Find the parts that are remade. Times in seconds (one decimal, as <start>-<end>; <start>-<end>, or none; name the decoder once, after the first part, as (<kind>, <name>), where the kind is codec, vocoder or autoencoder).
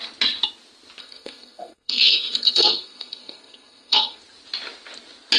1.0-4.2 (codec, SNAC)